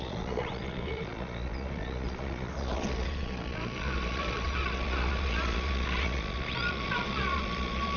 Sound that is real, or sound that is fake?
fake